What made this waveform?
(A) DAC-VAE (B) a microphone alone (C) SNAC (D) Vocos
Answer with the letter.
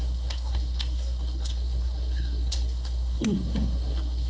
C